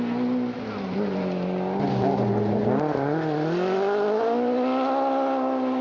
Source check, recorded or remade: recorded